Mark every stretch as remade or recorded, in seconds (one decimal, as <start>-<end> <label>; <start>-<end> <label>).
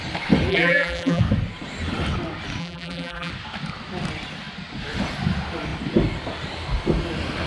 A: 0.0-0.5 recorded; 0.5-1.2 remade; 1.2-2.6 recorded; 2.6-3.3 remade; 3.3-7.5 recorded